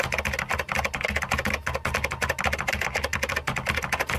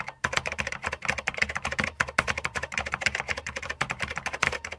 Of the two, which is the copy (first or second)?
second